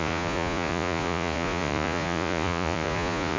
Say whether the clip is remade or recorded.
remade